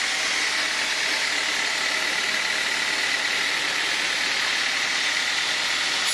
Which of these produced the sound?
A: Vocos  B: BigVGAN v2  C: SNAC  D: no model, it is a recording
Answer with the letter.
D